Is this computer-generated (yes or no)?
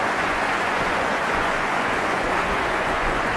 yes